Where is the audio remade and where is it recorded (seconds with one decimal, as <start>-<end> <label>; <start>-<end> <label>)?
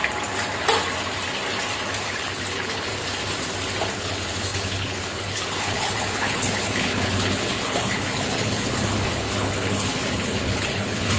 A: 0.0-2.0 recorded; 2.0-2.9 remade; 2.9-3.9 recorded; 3.9-11.2 remade